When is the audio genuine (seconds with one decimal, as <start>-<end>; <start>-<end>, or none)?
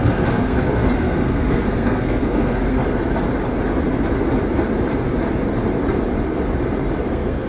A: 2.8-7.1